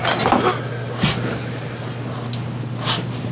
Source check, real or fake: real